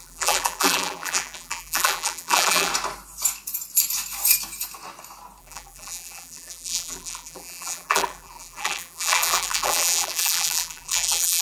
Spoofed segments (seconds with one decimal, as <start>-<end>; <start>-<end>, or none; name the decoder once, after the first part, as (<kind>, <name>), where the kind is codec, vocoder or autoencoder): 0.0-2.7 (vocoder, BigVGAN v2); 5.4-11.4